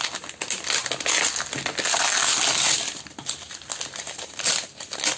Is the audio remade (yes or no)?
no